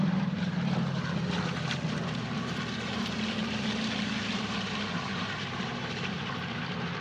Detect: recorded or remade remade